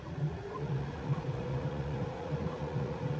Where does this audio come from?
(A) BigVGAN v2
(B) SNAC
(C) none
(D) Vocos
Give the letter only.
D